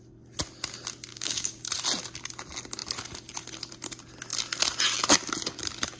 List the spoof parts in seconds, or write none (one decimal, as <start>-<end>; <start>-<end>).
1.1-1.6